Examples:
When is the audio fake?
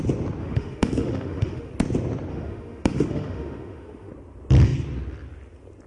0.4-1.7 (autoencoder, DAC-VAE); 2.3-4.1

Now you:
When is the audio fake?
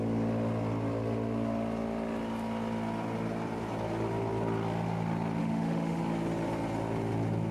5.4-6.0 (autoencoder, DAC-VAE)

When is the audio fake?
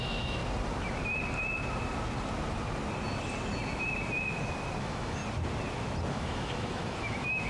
0.0-0.4 (autoencoder, DAC-VAE); 4.8-5.2; 6.1-7.5